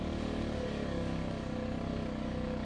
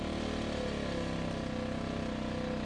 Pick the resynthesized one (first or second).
first